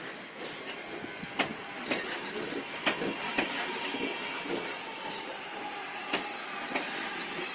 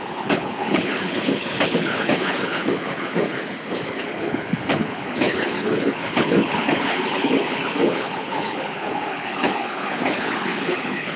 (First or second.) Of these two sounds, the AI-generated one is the second